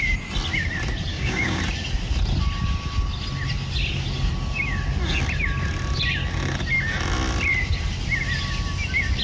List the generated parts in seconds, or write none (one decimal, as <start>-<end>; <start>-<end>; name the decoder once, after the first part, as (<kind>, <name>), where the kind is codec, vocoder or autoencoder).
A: 1.1-1.6 (codec, DAC)